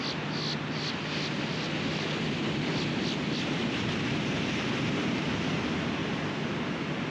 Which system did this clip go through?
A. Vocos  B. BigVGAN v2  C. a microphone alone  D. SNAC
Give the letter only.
C